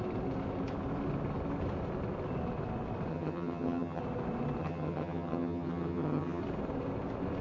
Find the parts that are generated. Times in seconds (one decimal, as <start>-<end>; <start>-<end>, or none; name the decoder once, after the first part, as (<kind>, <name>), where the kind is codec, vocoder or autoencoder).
3.1-4.0 (vocoder, HiFi-GAN); 4.6-6.4